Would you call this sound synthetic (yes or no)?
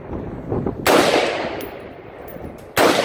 no